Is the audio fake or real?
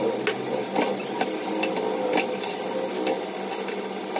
real